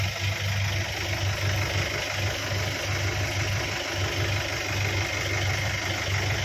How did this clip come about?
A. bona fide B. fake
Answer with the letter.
A